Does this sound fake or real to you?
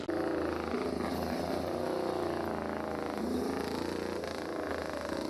real